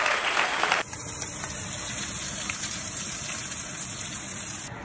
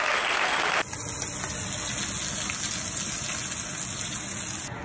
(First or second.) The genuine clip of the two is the second